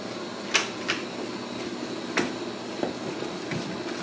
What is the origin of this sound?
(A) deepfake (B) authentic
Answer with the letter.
B